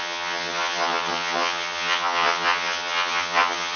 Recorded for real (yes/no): no